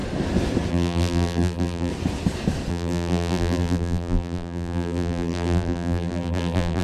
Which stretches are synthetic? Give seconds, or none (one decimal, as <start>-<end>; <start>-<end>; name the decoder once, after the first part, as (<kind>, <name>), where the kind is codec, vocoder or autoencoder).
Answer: 0.7-1.9 (vocoder, BigVGAN v2); 2.7-6.8